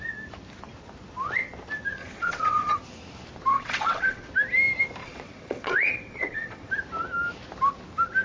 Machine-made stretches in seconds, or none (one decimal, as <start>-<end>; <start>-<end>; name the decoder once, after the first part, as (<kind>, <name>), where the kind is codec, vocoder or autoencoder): 2.0-2.8 (vocoder, WaveNeXt); 3.5-4.3; 5.0-6.7